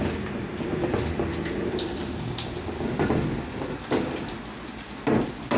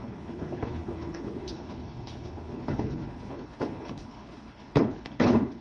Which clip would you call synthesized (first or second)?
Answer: second